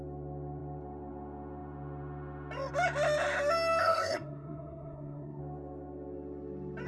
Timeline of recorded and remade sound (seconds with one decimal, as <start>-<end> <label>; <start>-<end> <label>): 0.0-3.8 recorded; 3.8-5.4 remade; 5.4-6.9 recorded